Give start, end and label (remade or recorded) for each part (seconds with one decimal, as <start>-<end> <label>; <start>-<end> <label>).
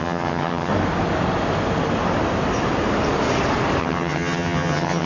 0.0-0.7 remade; 0.7-3.8 recorded; 3.8-5.1 remade